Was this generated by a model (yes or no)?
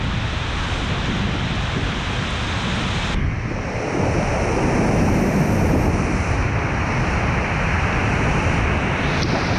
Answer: no